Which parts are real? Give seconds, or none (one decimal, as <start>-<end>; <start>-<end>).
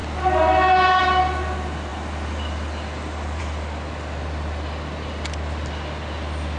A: 0.0-6.6